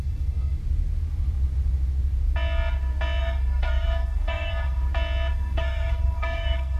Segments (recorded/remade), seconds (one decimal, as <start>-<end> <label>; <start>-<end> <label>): 0.0-0.6 remade; 0.6-3.2 recorded; 3.2-4.8 remade; 4.8-5.3 recorded; 5.3-6.8 remade